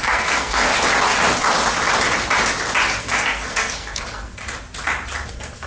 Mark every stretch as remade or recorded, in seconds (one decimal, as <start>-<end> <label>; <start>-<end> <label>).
0.0-0.7 remade; 0.7-3.0 recorded; 3.0-4.4 remade; 4.4-5.3 recorded; 5.3-5.7 remade